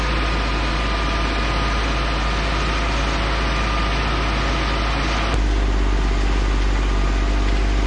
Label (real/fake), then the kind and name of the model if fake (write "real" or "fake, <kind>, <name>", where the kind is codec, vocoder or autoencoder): real